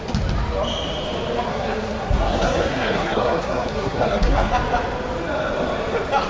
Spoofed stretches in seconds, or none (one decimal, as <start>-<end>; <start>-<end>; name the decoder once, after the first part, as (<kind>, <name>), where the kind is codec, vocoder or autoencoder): 1.5-4.5 (codec, SNAC)